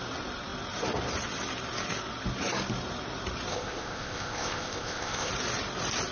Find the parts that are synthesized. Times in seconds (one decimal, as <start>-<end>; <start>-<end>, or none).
3.5-5.3